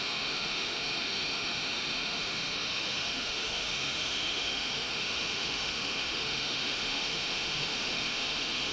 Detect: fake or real fake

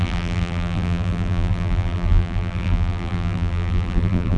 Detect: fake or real fake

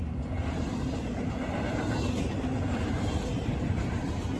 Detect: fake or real real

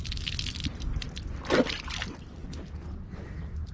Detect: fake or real real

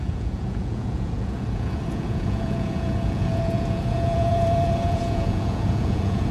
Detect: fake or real fake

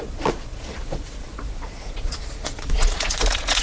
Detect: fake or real fake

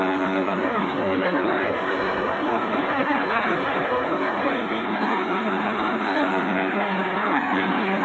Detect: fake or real fake